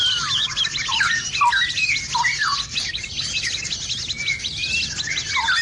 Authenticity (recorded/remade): recorded